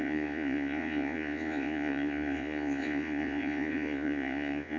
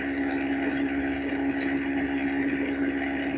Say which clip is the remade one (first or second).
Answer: first